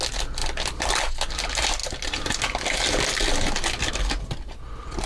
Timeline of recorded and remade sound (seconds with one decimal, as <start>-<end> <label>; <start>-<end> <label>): 0.0-5.1 recorded